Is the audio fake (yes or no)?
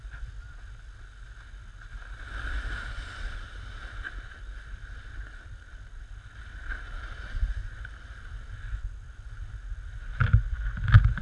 no